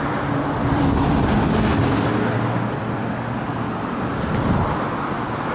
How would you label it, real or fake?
real